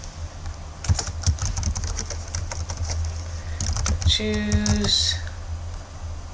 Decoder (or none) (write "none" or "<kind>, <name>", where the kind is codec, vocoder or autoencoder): none